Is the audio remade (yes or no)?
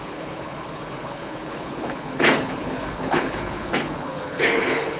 yes